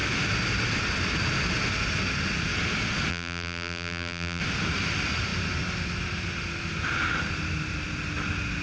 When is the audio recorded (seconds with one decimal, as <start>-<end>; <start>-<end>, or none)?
0.0-3.1; 4.4-8.6